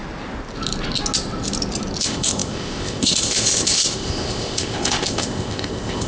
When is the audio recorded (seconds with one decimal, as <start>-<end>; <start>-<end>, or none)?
0.0-2.0